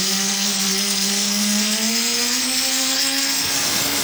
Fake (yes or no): yes